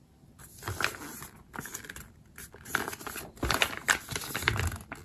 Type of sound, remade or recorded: recorded